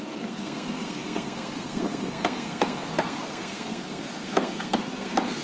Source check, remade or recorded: remade